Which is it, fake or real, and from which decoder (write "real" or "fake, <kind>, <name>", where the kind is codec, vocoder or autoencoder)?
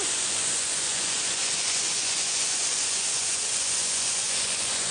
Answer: fake, vocoder, Vocos